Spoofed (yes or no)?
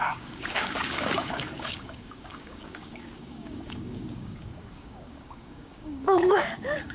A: yes